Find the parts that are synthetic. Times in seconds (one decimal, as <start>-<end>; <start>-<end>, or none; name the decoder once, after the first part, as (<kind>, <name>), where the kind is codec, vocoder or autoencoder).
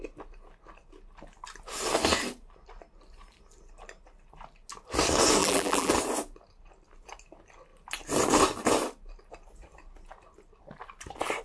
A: 5.4-5.9 (vocoder, BigVGAN v2)